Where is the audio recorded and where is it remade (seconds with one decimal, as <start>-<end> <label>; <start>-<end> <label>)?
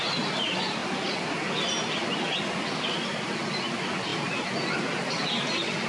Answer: 0.0-5.9 recorded